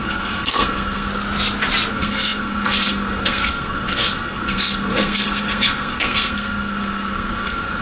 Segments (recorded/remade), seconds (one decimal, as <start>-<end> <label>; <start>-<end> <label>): 0.0-1.1 remade; 1.1-1.9 recorded; 1.9-7.8 remade